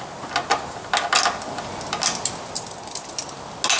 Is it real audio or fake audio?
real